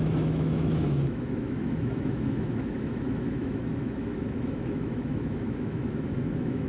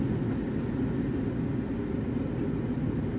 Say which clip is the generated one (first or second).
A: first